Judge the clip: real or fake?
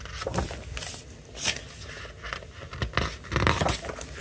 real